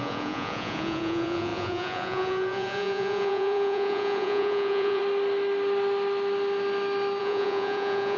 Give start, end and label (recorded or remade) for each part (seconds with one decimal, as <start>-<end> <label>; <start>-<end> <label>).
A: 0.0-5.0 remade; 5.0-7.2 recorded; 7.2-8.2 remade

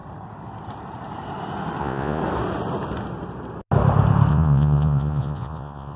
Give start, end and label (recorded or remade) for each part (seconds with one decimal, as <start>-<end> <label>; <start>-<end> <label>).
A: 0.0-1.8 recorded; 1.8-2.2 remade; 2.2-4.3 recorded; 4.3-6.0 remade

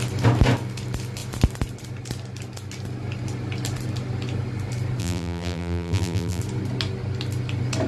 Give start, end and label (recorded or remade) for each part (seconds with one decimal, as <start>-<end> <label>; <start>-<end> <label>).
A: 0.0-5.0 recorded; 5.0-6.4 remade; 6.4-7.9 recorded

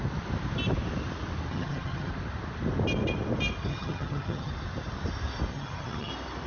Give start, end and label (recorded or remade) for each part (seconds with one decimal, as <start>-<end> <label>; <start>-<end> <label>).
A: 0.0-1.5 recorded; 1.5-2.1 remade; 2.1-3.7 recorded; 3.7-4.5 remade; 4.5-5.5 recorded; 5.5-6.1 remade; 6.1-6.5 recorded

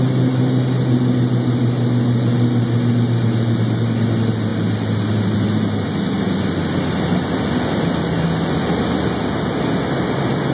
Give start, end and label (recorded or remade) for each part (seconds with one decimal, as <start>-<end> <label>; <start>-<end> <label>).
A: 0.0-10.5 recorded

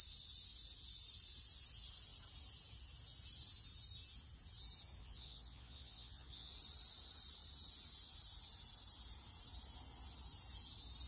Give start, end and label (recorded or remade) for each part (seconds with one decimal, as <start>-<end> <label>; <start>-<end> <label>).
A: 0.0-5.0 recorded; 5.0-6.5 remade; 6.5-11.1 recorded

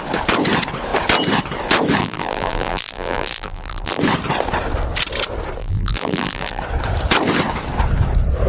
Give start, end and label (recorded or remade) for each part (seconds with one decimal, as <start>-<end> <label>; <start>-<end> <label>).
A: 0.0-2.0 recorded; 2.0-4.0 remade; 4.0-5.6 recorded; 5.6-6.6 remade; 6.6-8.5 recorded

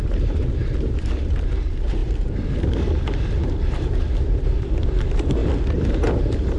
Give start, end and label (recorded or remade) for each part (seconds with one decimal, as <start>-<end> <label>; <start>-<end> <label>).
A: 0.0-5.4 remade; 5.4-6.1 recorded; 6.1-6.6 remade